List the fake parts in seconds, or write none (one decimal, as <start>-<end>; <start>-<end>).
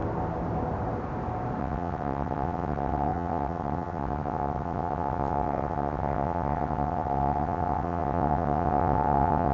1.6-9.5